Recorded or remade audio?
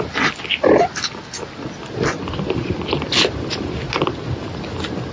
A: recorded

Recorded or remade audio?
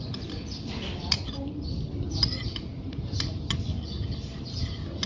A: recorded